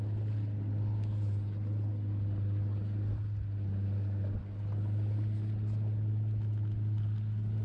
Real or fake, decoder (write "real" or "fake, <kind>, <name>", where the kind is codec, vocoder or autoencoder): real